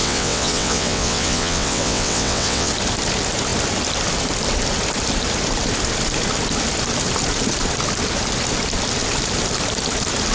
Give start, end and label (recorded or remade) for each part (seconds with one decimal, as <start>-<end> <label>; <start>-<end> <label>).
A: 0.0-2.7 remade; 2.7-10.3 recorded